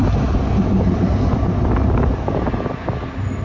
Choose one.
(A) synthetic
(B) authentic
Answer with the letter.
B